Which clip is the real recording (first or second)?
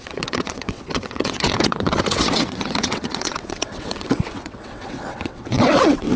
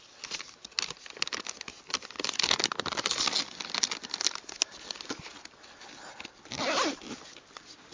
second